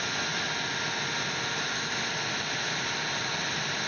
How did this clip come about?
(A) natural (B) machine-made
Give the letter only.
A